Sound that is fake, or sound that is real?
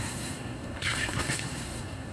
fake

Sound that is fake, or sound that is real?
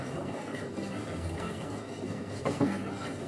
fake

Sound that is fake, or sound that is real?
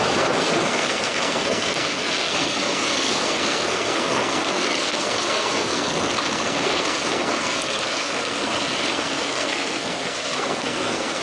fake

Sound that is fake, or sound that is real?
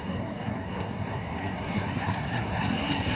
fake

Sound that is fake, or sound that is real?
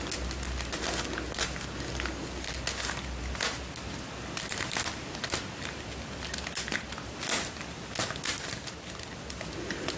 real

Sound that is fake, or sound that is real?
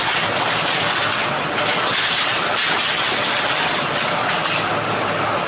real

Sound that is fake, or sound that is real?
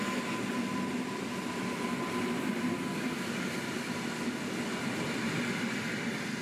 real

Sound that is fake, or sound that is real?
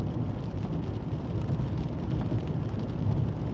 real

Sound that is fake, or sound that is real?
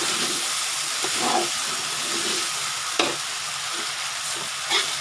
real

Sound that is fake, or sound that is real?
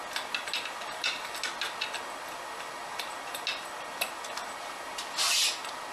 real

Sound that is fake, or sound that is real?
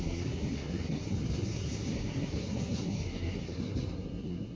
fake